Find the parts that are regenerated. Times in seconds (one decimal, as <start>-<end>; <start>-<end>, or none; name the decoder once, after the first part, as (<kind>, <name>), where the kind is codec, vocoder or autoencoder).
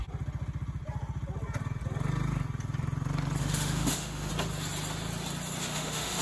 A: 3.4-4.3 (autoencoder, DAC-VAE); 5.6-6.2